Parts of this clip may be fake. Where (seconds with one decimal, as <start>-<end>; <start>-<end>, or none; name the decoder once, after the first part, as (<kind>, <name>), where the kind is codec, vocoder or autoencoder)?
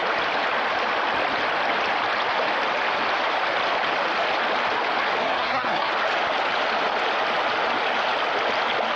5.2-5.9 (codec, SNAC)